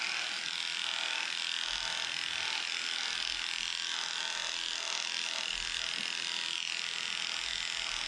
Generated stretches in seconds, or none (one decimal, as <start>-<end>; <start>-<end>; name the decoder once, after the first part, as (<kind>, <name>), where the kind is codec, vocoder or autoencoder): none